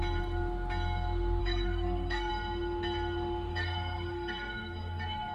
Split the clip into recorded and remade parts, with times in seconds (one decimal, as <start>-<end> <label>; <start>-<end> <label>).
0.0-1.4 recorded; 1.4-2.3 remade; 2.3-3.5 recorded; 3.5-5.3 remade